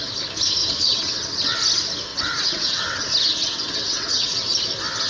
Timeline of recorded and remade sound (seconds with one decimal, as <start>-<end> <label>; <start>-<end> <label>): 0.0-0.6 recorded; 0.6-1.1 remade; 1.1-2.1 recorded; 2.1-3.0 remade; 3.0-3.4 recorded; 3.4-4.4 remade; 4.4-5.1 recorded